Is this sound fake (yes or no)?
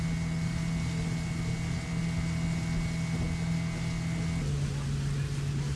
no